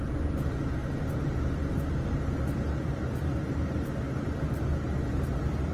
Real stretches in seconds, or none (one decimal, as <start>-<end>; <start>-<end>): 0.0-5.7